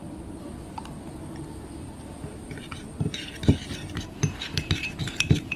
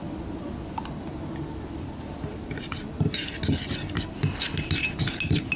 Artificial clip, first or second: first